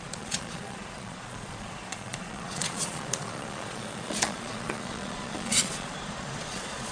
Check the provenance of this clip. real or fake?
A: fake